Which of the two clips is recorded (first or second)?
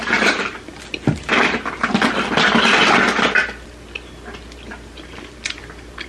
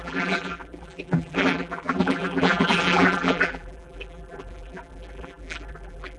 first